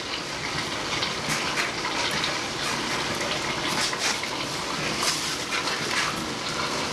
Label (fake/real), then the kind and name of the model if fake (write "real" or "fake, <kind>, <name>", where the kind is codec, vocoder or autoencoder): real